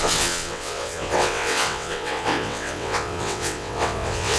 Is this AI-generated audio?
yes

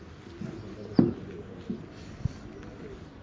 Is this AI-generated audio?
no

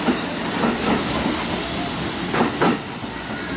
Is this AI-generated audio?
no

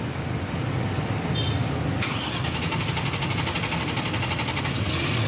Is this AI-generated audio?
no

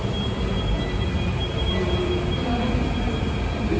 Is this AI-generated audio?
no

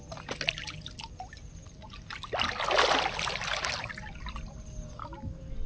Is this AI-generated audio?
no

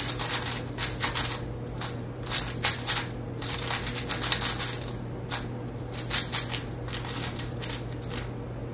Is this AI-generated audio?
no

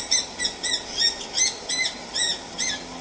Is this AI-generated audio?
no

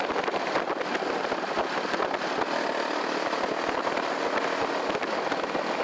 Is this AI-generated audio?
no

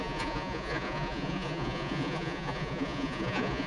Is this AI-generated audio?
yes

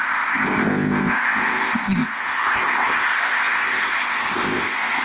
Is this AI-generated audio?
yes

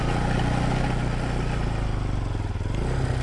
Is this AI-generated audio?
no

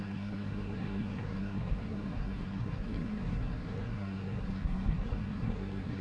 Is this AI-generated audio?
yes